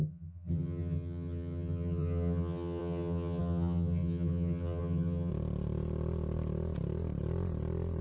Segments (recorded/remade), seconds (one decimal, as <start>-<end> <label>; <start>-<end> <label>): 0.0-5.3 remade; 5.3-8.0 recorded